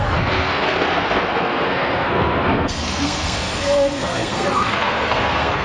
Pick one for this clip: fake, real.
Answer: fake